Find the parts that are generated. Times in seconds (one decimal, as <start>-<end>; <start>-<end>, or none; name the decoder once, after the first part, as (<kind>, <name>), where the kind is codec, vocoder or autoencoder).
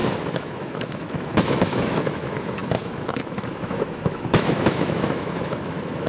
0.0-6.1 (autoencoder, DAC-VAE)